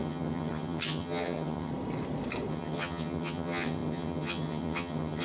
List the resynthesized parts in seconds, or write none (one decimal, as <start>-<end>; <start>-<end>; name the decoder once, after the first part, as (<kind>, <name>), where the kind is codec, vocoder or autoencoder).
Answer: 0.0-1.7 (vocoder, HiFi-GAN); 2.5-5.2